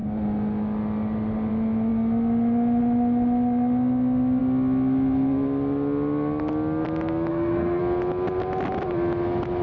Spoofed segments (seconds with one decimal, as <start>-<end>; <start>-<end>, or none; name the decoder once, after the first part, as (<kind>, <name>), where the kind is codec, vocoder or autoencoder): 7.3-7.8 (codec, SNAC)